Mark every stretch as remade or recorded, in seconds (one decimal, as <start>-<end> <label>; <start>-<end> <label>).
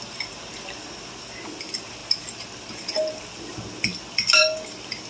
0.0-5.1 recorded